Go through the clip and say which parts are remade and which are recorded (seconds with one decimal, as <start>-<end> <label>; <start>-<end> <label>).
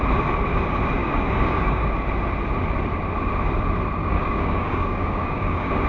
0.0-1.0 recorded; 1.0-1.9 remade; 1.9-4.0 recorded; 4.0-5.9 remade